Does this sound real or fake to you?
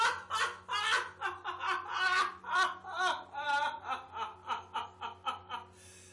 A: real